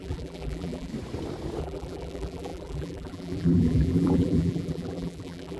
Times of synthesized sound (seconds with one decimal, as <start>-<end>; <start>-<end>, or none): 0.0-0.9; 1.6-5.6